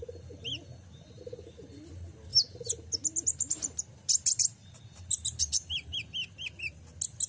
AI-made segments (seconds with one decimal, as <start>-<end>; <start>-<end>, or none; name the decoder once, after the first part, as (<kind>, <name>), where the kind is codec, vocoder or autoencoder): none